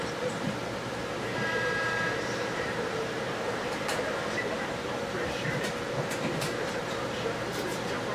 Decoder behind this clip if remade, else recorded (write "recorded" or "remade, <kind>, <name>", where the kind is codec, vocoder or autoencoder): remade, vocoder, BigVGAN v2